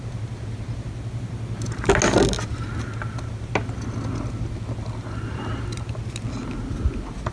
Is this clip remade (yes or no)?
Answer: no